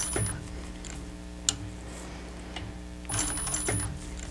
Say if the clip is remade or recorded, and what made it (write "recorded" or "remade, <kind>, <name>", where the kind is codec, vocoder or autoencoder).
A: recorded